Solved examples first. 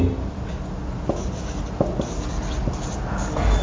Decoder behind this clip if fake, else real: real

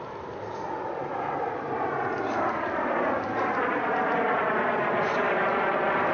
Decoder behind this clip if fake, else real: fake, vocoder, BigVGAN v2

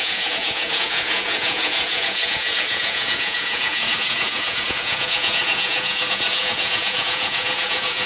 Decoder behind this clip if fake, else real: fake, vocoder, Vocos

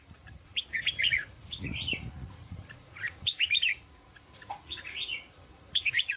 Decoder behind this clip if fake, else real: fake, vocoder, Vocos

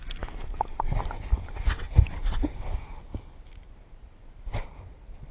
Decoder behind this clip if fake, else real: real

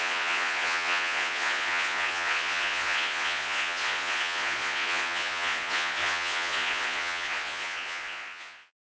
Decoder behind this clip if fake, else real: fake, vocoder, Vocos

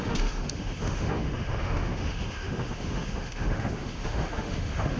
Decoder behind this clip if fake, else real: fake, autoencoder, DAC-VAE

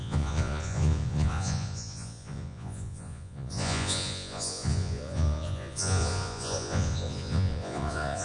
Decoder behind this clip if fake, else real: fake, vocoder, Vocos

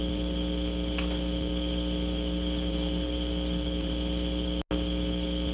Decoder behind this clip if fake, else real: real